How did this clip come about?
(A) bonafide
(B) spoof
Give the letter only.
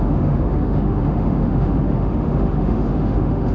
B